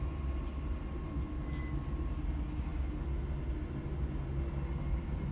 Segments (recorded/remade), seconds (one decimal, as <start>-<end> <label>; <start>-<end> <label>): 0.0-0.5 recorded; 0.5-1.3 remade; 1.3-5.3 recorded